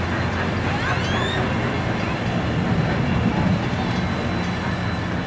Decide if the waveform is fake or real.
real